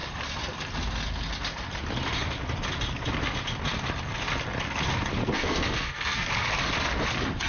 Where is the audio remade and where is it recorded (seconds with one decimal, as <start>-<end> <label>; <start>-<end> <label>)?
0.0-5.2 recorded; 5.2-6.3 remade; 6.3-7.5 recorded